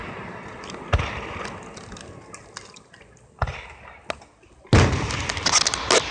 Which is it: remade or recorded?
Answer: recorded